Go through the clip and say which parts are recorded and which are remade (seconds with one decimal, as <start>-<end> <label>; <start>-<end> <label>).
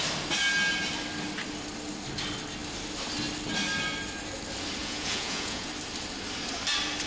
0.0-4.8 recorded; 4.8-5.7 remade; 5.7-7.1 recorded